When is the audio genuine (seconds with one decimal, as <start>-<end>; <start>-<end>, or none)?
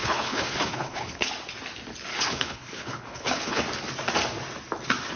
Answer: 1.3-2.1; 3.6-5.2